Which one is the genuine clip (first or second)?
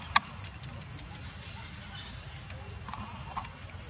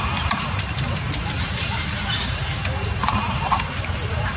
first